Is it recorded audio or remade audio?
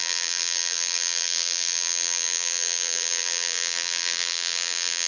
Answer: remade